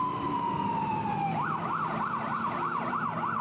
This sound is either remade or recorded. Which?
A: remade